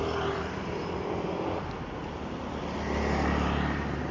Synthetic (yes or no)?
no